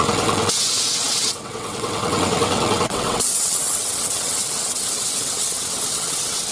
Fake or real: fake